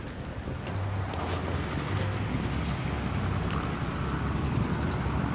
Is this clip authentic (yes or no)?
yes